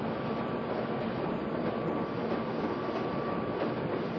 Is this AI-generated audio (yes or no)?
no